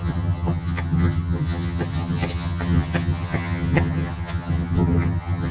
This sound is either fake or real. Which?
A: fake